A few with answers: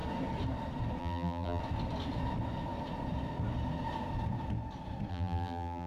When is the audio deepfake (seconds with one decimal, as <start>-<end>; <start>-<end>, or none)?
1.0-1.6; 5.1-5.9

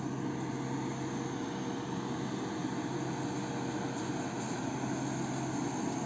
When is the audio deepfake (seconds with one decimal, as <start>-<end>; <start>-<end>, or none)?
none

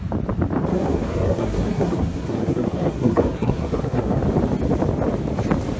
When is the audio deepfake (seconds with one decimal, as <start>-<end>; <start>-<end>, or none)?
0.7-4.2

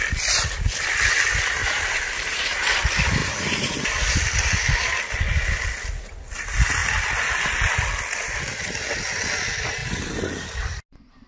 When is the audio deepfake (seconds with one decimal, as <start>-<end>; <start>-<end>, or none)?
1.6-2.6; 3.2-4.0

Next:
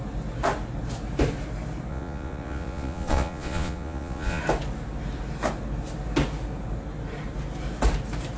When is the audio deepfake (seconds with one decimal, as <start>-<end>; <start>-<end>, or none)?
1.9-4.4